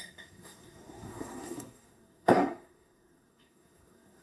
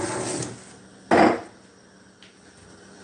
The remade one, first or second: first